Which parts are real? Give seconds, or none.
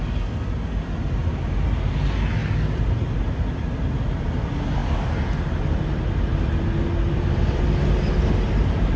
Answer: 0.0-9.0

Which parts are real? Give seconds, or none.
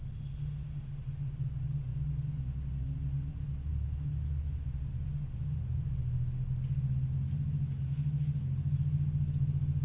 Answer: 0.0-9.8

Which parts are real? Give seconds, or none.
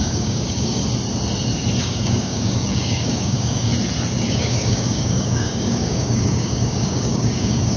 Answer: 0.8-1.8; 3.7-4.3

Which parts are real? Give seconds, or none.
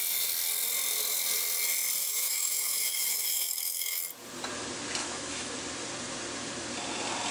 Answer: 0.0-2.0; 4.0-5.0; 5.5-7.3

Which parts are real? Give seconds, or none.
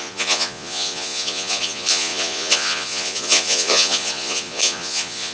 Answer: none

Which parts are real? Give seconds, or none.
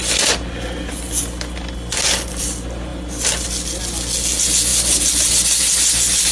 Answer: 0.0-6.3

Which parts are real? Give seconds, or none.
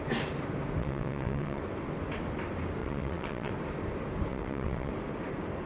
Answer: 0.0-0.8; 1.6-2.8; 3.5-4.3; 4.9-5.7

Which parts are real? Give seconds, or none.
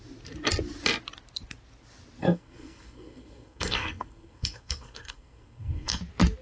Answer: 0.0-2.2; 6.0-6.4